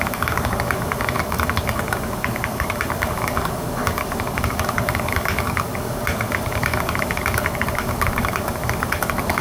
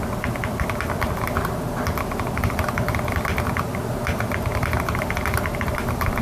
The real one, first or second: second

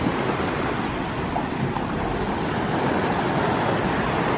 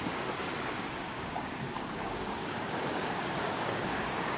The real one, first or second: first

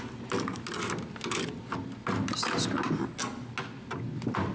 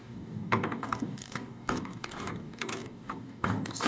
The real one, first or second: first